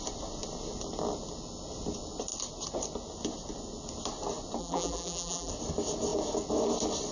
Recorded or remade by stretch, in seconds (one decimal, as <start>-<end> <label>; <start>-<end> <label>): 0.0-4.6 recorded; 4.6-5.5 remade; 5.5-7.1 recorded

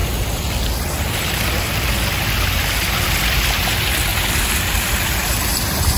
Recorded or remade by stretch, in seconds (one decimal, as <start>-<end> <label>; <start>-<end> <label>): 0.0-4.1 recorded; 4.1-5.6 remade; 5.6-6.0 recorded

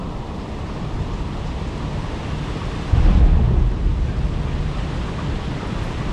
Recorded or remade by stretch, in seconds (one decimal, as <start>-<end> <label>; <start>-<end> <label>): 0.0-2.4 recorded; 2.4-3.9 remade; 3.9-4.6 recorded; 4.6-6.1 remade

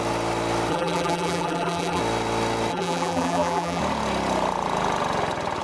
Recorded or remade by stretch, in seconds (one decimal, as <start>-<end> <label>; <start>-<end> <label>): 0.0-0.7 recorded; 0.7-2.0 remade; 2.0-2.7 recorded; 2.7-3.8 remade; 3.8-5.6 recorded

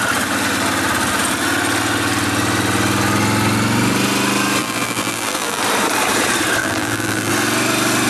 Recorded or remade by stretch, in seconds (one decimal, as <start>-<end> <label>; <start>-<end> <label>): 0.0-4.6 recorded; 4.6-5.6 remade; 5.6-6.6 recorded; 6.6-7.3 remade; 7.3-8.1 recorded

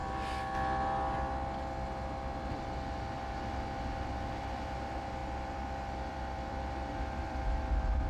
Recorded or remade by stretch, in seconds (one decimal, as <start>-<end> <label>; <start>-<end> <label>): 0.0-5.2 recorded; 5.2-7.4 remade; 7.4-8.1 recorded

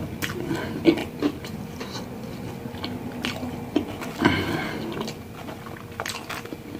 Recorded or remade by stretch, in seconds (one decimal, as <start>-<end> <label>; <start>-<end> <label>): 0.0-1.0 recorded; 1.0-1.8 remade; 1.8-6.8 recorded